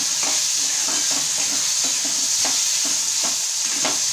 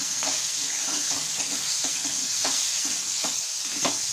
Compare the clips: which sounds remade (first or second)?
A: second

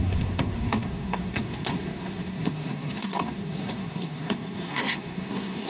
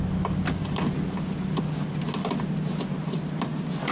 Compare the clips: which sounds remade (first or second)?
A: first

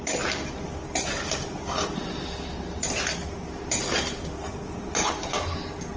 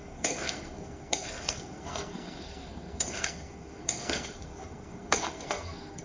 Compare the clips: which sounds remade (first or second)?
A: second